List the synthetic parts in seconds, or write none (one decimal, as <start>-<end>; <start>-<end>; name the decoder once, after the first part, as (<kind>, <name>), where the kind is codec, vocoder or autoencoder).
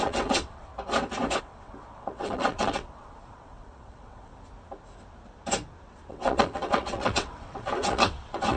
0.0-0.7 (vocoder, WaveNeXt); 1.4-4.3; 6.1-8.6